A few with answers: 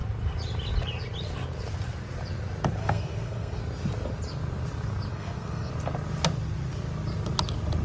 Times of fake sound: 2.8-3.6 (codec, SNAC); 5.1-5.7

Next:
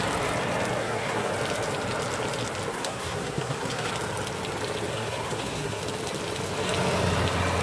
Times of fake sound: 0.8-1.3 (codec, SNAC); 2.7-3.9; 4.9-5.8

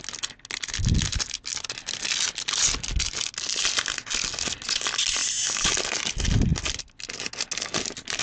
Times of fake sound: none

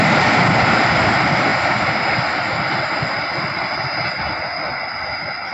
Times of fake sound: none

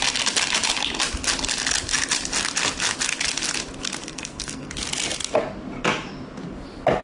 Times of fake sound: 4.0-4.7 (codec, SNAC)